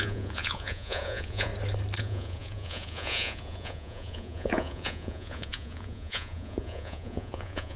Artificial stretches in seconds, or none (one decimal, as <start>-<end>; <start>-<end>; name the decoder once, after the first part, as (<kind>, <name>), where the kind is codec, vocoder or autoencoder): 0.0-1.5 (vocoder, Vocos); 2.0-7.8

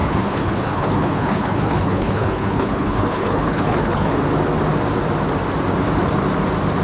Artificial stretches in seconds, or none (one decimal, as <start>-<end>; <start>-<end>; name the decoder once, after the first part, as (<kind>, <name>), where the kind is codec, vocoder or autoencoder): 0.0-4.1 (codec, HILCodec)

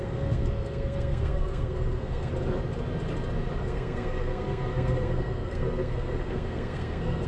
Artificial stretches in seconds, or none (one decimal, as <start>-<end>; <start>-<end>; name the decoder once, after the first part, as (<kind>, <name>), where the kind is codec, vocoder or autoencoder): 0.0-2.3 (codec, SNAC); 3.6-7.3

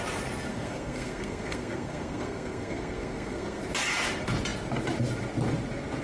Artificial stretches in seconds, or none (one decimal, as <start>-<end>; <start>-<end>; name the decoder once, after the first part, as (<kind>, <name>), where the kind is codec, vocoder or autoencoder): 0.5-3.6 (codec, SNAC)

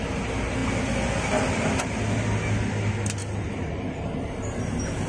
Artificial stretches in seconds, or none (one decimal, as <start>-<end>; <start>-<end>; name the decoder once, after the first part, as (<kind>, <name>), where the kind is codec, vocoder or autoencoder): none

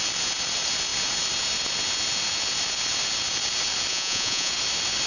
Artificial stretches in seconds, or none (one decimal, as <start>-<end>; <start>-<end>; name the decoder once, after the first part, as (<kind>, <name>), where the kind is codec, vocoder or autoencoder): 3.9-4.5 (vocoder, Vocos)

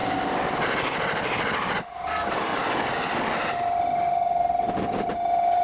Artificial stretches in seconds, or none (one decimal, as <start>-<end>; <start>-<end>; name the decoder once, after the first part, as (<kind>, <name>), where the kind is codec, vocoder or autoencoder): 0.6-2.5 (vocoder, BigVGAN v2); 4.7-5.6